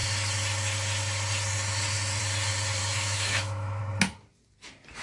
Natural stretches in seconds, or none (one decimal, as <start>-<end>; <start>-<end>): 0.0-2.8; 3.8-5.0